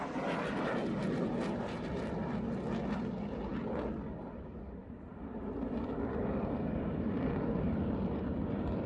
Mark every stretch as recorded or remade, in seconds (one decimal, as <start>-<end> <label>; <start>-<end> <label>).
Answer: 0.0-8.9 recorded